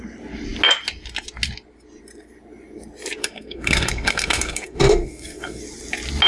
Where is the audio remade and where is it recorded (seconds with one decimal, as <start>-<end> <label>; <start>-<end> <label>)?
0.0-3.2 recorded; 3.2-5.6 remade; 5.6-6.3 recorded